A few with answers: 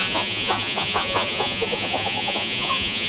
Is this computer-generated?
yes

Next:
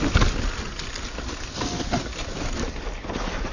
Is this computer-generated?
no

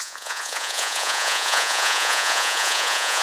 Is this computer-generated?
yes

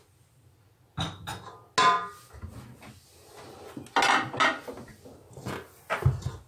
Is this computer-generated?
no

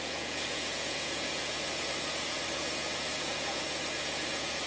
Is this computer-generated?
yes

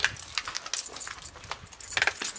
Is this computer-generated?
no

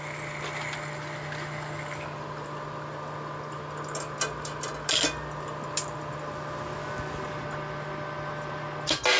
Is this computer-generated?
no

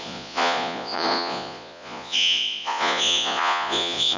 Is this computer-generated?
yes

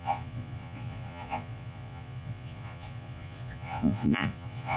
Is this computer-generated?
yes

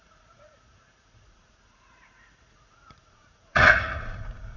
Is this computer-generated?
yes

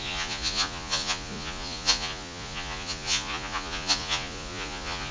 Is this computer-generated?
yes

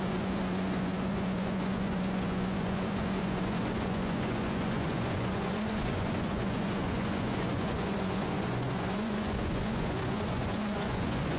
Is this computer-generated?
yes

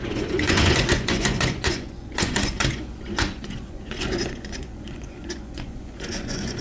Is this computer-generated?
yes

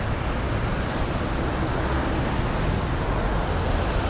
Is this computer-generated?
no